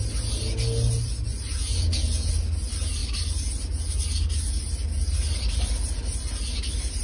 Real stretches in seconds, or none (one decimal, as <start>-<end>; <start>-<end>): 0.0-1.5; 2.3-7.0